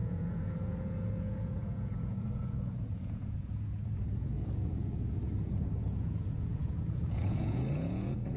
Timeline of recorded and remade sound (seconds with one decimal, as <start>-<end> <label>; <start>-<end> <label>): 0.0-8.4 remade